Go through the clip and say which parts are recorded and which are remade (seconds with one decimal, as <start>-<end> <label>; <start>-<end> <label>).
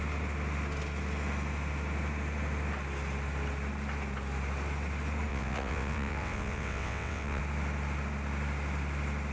0.0-5.3 recorded; 5.3-7.4 remade; 7.4-9.3 recorded